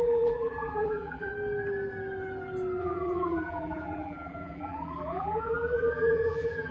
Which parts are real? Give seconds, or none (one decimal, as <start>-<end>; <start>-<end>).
1.3-2.8